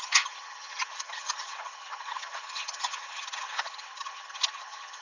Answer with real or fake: fake